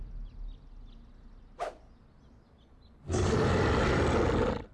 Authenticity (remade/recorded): recorded